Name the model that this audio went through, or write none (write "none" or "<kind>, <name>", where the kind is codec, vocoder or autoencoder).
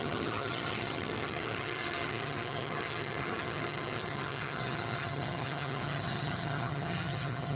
vocoder, HiFi-GAN